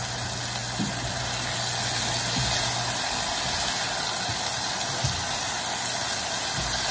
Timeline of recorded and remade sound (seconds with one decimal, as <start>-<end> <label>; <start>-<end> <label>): 0.0-6.9 recorded